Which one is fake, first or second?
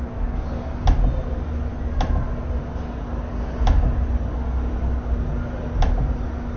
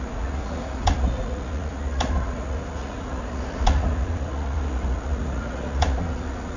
second